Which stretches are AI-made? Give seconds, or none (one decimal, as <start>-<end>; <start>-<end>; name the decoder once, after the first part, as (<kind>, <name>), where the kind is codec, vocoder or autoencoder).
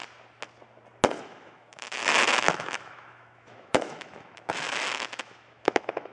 1.2-6.1 (autoencoder, DAC-VAE)